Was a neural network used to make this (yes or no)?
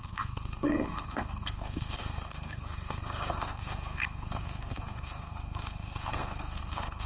yes